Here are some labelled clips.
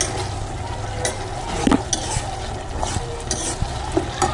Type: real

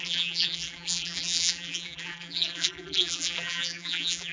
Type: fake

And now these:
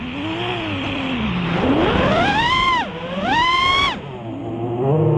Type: real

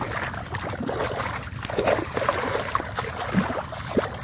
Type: real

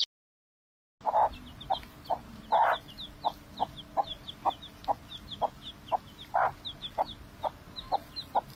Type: real